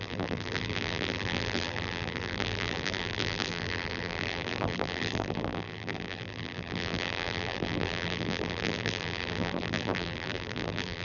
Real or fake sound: fake